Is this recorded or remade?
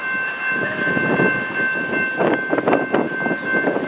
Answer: recorded